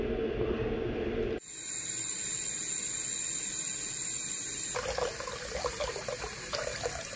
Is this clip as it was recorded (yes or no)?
yes